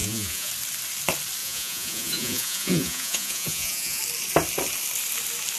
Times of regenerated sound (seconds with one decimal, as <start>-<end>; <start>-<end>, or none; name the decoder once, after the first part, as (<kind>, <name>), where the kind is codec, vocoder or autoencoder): 0.0-0.5 (vocoder, Vocos); 1.4-4.0